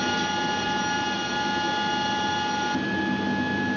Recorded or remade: recorded